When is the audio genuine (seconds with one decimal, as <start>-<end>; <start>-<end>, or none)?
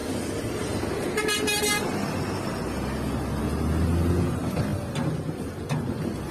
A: 0.0-6.3